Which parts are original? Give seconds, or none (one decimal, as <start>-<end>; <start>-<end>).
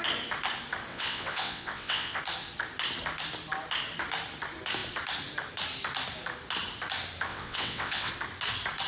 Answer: 0.0-0.9; 2.2-7.3; 8.1-8.9